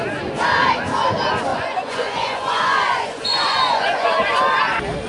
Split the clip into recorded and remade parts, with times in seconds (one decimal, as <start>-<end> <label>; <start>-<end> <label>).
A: 0.0-1.5 recorded; 1.5-4.6 remade; 4.6-5.1 recorded